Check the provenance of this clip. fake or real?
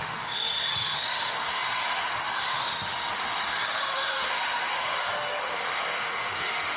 fake